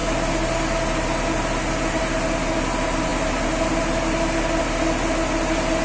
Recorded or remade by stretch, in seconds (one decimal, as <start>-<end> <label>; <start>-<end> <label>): 0.0-5.8 recorded